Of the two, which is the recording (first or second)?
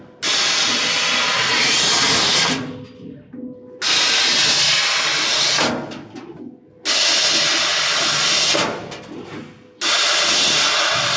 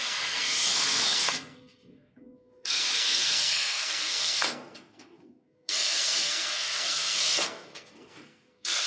first